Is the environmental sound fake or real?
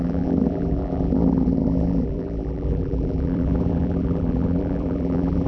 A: fake